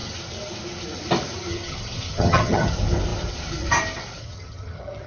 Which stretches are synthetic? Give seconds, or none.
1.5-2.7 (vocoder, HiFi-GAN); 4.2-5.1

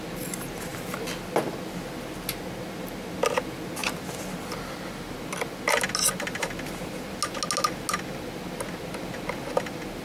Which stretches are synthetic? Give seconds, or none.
none

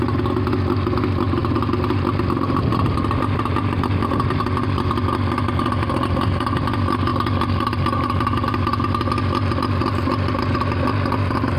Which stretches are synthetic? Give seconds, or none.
none

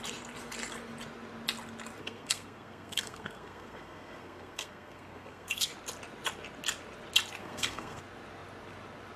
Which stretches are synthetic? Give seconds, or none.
2.0-5.7 (codec, SNAC); 7.4-8.0

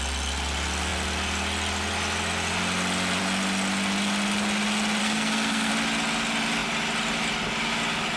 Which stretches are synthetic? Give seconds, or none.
5.0-5.7 (codec, SNAC)